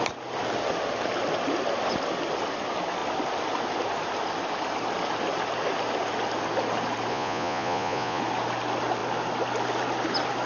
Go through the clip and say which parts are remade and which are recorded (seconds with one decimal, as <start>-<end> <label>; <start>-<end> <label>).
0.0-7.1 recorded; 7.1-8.2 remade; 8.2-10.5 recorded